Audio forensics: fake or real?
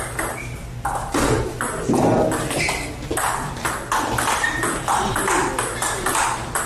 real